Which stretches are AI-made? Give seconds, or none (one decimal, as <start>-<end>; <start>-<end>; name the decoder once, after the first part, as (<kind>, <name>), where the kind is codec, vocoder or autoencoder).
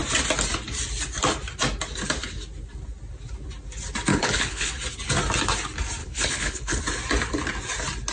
4.1-4.7 (codec, HILCodec); 6.0-6.8